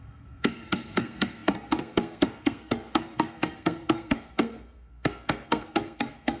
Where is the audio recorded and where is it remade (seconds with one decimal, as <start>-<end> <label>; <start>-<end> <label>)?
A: 0.0-6.4 remade